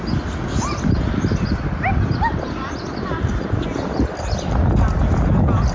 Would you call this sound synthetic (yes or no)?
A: no